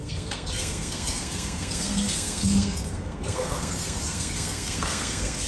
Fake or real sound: fake